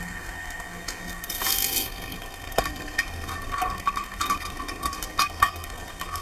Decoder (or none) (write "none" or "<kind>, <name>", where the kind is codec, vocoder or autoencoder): codec, SNAC